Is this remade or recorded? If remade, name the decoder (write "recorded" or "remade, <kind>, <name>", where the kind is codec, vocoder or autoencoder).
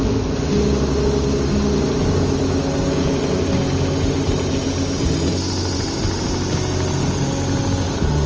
recorded